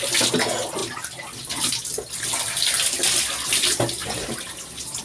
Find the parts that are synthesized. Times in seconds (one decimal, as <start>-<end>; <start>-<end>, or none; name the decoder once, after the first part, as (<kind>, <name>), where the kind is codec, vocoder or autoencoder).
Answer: 4.0-5.0 (vocoder, BigVGAN v2)